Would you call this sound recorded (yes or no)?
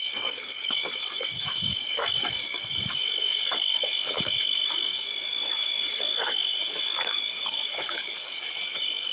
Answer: no